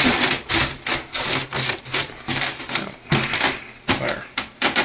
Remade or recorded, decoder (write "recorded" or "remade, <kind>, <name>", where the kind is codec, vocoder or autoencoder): remade, vocoder, BigVGAN v2